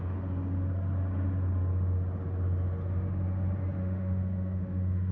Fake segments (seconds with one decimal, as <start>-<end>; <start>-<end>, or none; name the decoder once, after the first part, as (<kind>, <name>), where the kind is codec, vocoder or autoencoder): 3.8-5.1 (autoencoder, DAC-VAE)